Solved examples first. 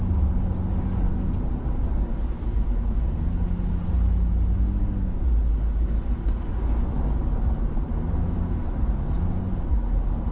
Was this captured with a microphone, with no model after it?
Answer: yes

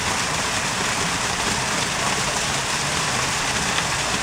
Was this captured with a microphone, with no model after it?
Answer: yes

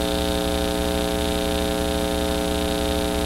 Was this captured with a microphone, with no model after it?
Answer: yes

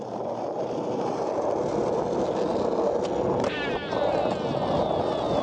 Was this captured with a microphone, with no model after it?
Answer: yes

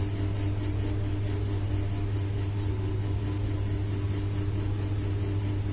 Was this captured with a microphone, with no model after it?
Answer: yes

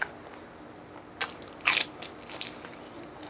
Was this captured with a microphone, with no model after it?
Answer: yes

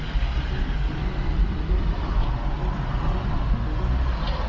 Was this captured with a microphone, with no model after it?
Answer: yes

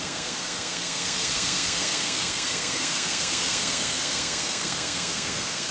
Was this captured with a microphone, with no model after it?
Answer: no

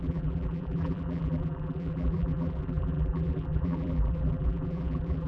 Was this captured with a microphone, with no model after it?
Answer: no